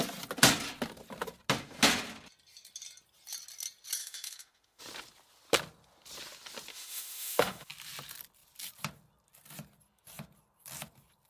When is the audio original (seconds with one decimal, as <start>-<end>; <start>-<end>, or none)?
0.0-4.0; 4.8-6.7; 7.7-11.3